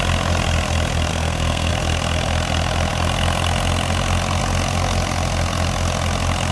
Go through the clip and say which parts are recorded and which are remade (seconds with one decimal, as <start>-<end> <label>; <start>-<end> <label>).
0.0-1.1 recorded; 1.1-1.7 remade; 1.7-6.5 recorded